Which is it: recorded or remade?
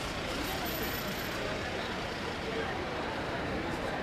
remade